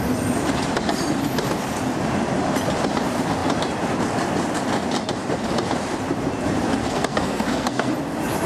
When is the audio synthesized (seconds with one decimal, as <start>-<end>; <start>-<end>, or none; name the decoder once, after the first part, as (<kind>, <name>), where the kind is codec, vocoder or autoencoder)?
6.8-7.9 (codec, SNAC)